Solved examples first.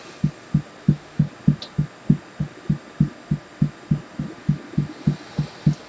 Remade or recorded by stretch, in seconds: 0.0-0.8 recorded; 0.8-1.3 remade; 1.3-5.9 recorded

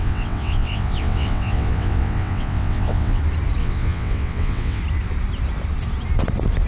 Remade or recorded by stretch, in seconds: 0.0-3.2 remade; 3.2-3.6 recorded; 3.6-4.8 remade; 4.8-6.7 recorded

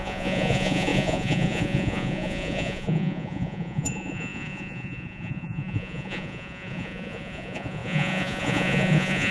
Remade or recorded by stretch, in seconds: 0.0-9.3 remade

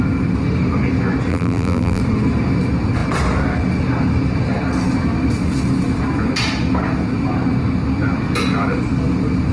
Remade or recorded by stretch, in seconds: 0.0-1.3 recorded; 1.3-2.0 remade; 2.0-9.5 recorded

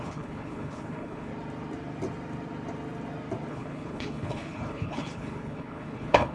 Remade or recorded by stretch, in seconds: 0.0-1.3 remade; 1.3-3.5 recorded; 3.5-6.3 remade

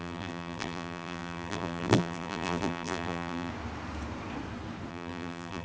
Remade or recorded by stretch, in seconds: 0.0-3.5 remade; 3.5-4.9 recorded; 4.9-5.6 remade

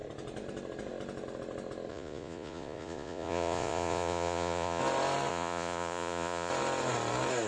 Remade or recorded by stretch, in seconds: 0.0-1.9 recorded; 1.9-4.8 remade; 4.8-5.3 recorded; 5.3-6.5 remade; 6.5-7.5 recorded